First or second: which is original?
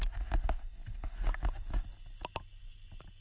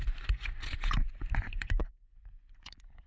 first